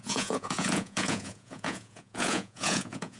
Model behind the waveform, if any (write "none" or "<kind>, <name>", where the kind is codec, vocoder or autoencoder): vocoder, Vocos